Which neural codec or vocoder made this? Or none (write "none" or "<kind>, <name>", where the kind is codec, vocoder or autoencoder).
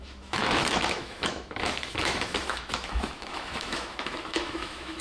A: autoencoder, DAC-VAE